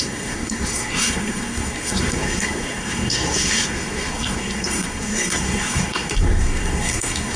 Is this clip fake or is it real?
fake